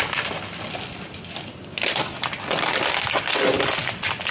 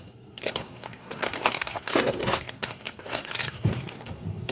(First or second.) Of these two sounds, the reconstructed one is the second